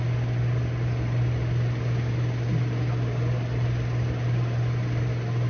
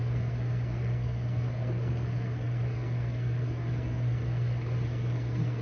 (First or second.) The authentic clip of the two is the first